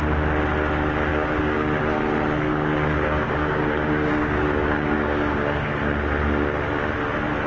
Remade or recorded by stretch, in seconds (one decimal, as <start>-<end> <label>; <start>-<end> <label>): 0.0-1.1 recorded; 1.1-1.8 remade; 1.8-2.5 recorded; 2.5-5.7 remade; 5.7-7.5 recorded